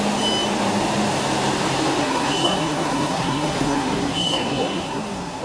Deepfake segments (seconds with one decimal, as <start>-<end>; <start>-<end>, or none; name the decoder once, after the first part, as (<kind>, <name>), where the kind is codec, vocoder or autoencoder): 2.0-5.4 (codec, SNAC)

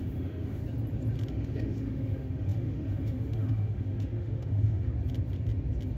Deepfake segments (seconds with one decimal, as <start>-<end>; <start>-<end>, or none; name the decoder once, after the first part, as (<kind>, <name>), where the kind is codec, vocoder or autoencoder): 0.0-0.6 (autoencoder, DAC-VAE); 1.3-4.9

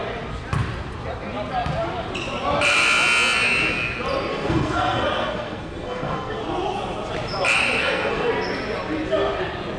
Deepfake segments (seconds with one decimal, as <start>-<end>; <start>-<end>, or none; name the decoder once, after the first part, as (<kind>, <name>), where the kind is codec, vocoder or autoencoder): 4.3-6.4 (codec, SNAC); 7.8-8.3

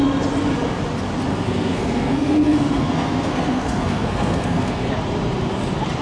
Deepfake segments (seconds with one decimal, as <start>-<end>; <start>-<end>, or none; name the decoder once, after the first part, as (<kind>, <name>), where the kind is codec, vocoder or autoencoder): 1.3-4.9 (codec, SNAC)